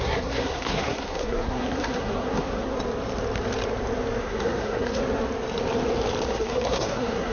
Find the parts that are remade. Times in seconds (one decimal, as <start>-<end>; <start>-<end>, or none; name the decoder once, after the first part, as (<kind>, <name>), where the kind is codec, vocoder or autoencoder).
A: 0.0-2.7 (codec, SNAC); 4.2-5.0; 6.3-7.3